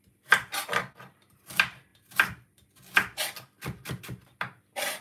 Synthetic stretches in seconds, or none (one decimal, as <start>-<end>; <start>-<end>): none